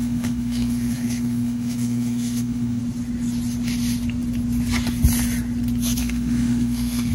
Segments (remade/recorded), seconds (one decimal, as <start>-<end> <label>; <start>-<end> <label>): 0.0-2.8 remade; 2.8-6.0 recorded; 6.0-7.1 remade

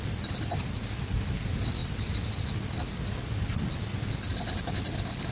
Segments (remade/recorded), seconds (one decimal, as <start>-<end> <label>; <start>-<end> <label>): 0.0-5.3 recorded

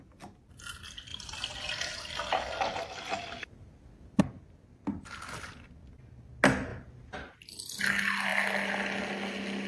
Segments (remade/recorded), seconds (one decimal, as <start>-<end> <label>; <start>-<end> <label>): 0.0-9.7 recorded